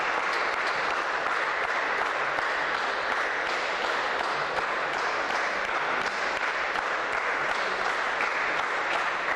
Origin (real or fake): real